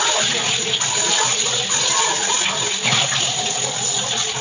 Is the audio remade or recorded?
recorded